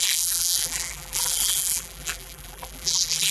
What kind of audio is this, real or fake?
fake